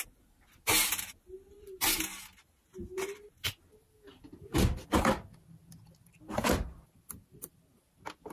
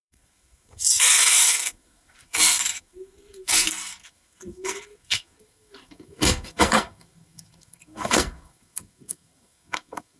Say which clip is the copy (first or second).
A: second